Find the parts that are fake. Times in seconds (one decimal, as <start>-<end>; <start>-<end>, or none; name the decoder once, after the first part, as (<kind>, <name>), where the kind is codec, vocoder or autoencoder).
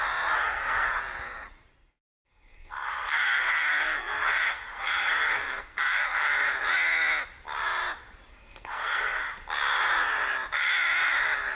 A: 0.4-1.0 (codec, SNAC); 1.8-6.3; 8.3-9.2